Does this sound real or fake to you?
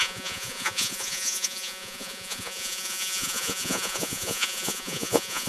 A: fake